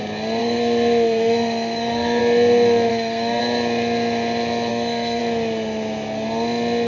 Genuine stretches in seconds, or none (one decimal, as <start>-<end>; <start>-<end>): 0.0-0.4; 2.2-2.9; 3.4-4.7; 5.2-6.9